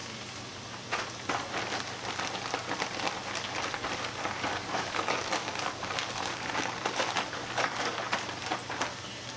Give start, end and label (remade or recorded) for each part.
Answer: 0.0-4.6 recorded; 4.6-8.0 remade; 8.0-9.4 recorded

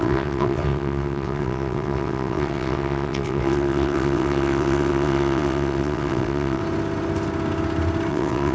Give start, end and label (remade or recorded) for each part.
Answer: 0.0-6.6 remade; 6.6-8.1 recorded; 8.1-8.5 remade

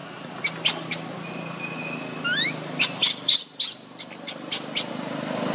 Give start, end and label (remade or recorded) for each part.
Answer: 0.0-5.5 recorded

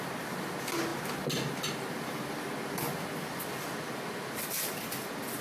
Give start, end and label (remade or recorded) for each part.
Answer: 0.0-5.4 recorded